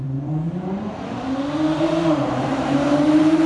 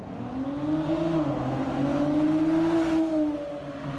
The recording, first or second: second